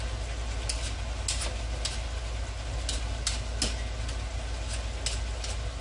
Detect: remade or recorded recorded